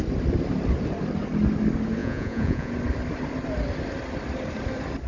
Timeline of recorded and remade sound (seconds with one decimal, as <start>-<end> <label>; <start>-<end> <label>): 0.0-2.0 recorded; 2.0-2.7 remade; 2.7-5.1 recorded